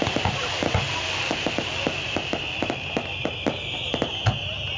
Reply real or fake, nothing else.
real